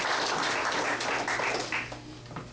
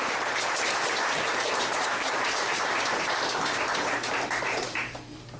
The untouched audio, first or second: first